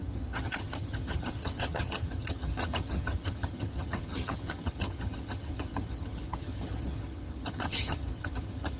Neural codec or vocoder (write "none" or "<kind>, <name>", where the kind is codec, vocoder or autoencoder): vocoder, HiFi-GAN